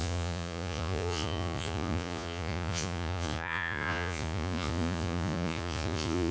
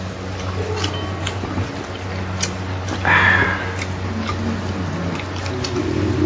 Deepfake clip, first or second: first